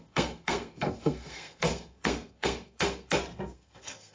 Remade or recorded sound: remade